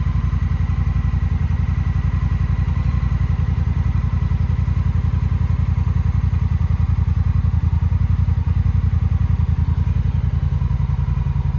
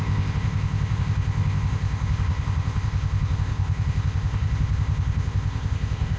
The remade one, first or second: second